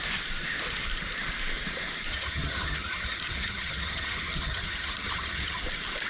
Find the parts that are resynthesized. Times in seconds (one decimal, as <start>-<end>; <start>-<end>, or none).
2.1-5.6